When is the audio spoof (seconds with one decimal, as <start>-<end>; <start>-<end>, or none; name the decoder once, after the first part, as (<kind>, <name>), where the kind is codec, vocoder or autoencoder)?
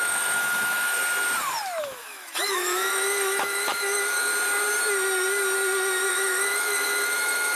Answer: 0.0-1.0 (autoencoder, DAC-VAE); 1.8-4.3; 6.1-7.6